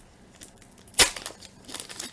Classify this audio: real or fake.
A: real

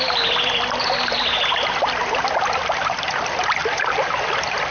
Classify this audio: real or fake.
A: real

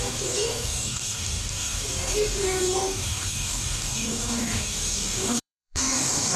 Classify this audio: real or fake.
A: fake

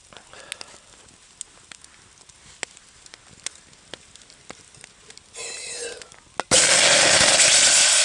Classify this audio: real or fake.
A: real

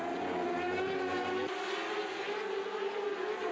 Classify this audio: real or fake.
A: real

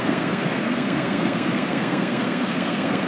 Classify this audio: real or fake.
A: fake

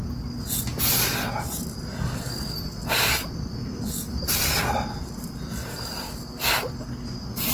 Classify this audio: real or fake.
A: real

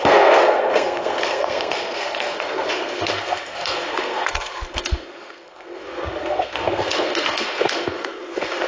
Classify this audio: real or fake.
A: fake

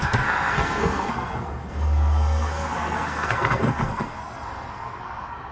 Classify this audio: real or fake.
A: fake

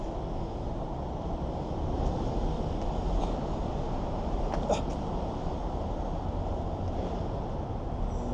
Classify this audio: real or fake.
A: real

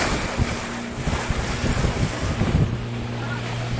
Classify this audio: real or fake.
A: real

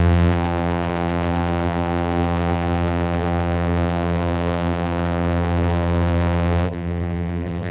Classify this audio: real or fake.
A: fake